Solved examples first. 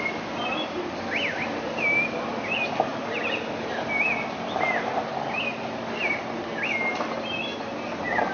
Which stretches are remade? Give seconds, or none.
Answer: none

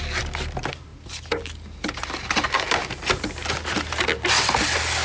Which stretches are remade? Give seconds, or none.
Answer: none

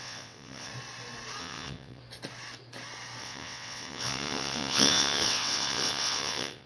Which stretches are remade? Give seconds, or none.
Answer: 0.0-0.7 (vocoder, WaveNeXt); 1.4-2.0; 3.2-6.7

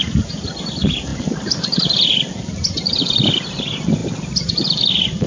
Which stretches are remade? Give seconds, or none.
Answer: none

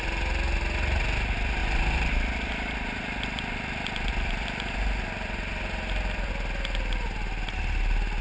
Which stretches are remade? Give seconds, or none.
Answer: none

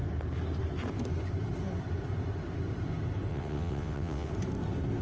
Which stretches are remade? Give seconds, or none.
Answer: 3.3-4.3 (vocoder, WaveNeXt)